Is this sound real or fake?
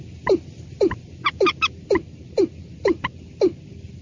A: real